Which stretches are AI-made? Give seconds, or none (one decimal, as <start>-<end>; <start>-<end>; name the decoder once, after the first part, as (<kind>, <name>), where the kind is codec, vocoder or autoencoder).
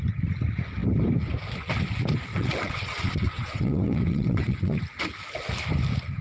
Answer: 2.3-4.8 (vocoder, WaveNeXt)